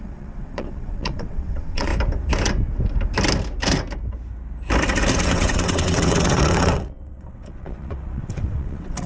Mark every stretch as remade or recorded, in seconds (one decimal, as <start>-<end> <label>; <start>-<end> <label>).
0.0-1.9 remade; 1.9-5.2 recorded; 5.2-9.1 remade